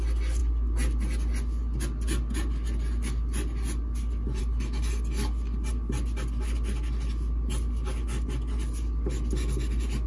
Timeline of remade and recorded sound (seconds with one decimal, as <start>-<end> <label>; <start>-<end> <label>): 0.0-10.1 recorded